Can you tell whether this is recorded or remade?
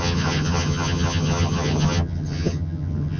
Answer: remade